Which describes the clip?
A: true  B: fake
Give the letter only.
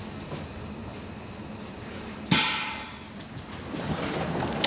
A